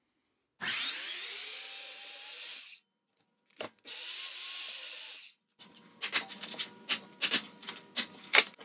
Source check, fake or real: real